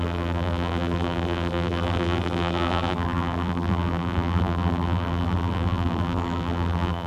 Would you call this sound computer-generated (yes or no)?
yes